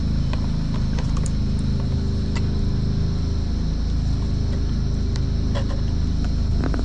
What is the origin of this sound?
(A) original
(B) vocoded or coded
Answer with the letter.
A